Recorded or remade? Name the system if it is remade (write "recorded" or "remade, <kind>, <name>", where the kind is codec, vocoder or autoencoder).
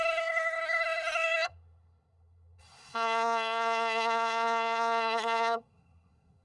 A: remade, codec, SNAC